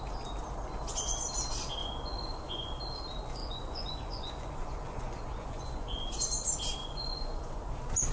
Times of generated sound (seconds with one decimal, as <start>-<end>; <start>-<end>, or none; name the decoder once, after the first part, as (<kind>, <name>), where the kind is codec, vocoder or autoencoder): 1.8-2.8 (vocoder, Vocos); 3.4-6.1; 6.8-7.6